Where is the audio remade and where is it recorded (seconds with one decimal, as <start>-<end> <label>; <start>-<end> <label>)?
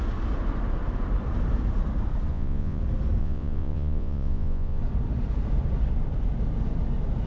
0.0-2.3 recorded; 2.3-2.8 remade; 2.8-3.2 recorded; 3.2-4.8 remade; 4.8-7.3 recorded